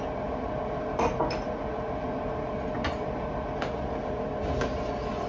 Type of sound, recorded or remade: recorded